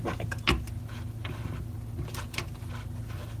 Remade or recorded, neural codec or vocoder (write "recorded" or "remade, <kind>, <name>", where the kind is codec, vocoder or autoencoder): recorded